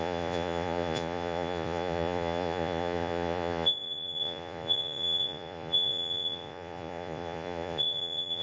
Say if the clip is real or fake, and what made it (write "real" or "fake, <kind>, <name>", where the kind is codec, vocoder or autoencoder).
fake, vocoder, Vocos